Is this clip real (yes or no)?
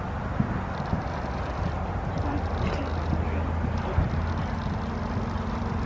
yes